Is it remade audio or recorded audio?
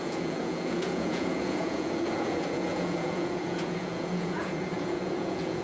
remade